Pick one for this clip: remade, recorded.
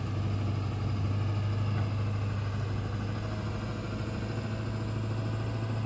recorded